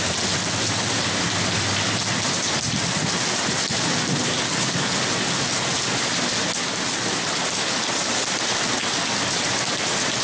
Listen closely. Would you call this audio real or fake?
real